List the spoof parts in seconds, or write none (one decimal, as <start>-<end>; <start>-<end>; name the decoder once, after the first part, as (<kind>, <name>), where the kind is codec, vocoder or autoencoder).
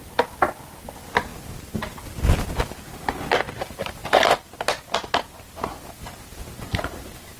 none